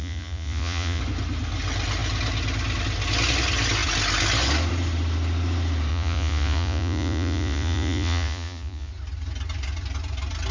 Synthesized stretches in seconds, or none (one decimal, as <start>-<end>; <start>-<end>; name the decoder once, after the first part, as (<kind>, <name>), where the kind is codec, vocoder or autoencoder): 0.0-1.0 (vocoder, Vocos); 5.9-8.9